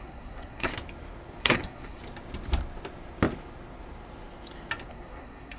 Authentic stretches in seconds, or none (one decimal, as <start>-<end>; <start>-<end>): 0.7-1.4; 2.0-4.9